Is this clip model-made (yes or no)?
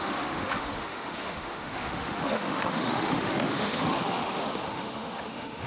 yes